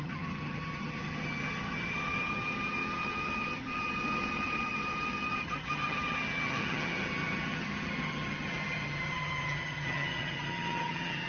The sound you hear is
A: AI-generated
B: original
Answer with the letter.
A